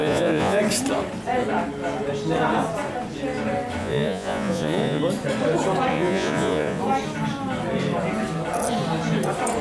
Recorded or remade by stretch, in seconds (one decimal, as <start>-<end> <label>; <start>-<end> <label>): 0.0-0.6 remade; 0.6-3.8 recorded; 3.8-5.0 remade; 5.0-5.9 recorded; 5.9-6.8 remade; 6.8-9.6 recorded